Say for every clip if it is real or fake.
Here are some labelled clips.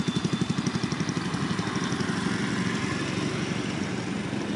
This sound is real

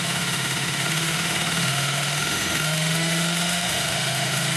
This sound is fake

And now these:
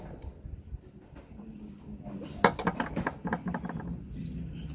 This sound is real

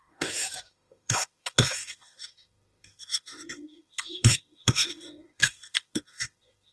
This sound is fake